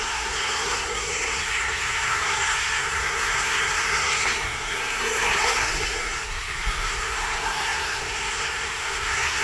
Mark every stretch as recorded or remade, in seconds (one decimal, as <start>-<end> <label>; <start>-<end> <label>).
0.0-9.4 remade